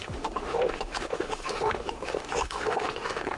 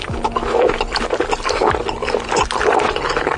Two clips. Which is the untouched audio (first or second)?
second